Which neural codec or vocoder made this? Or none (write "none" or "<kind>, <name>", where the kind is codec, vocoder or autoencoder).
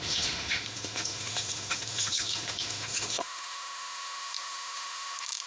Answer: autoencoder, DAC-VAE